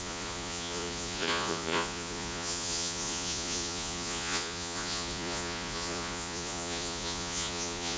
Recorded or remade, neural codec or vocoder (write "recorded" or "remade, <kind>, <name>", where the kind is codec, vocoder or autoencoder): remade, vocoder, Vocos